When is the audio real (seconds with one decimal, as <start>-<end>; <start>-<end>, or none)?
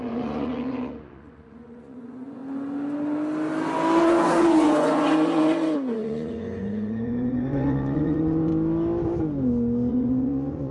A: 2.4-4.0; 8.5-9.9